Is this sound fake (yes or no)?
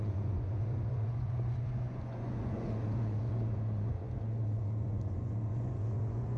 yes